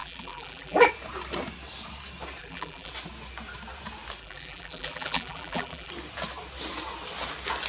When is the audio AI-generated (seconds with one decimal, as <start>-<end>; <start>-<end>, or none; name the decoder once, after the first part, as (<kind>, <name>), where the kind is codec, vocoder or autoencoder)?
0.0-0.9 (vocoder, BigVGAN v2); 2.4-2.9; 4.2-5.9